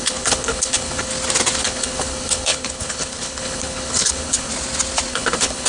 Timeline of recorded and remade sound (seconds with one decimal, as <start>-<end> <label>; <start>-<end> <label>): 0.0-1.1 remade; 1.1-1.6 recorded; 1.6-4.5 remade; 4.5-5.1 recorded; 5.1-5.7 remade